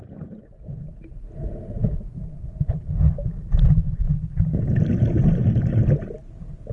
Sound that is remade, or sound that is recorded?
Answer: recorded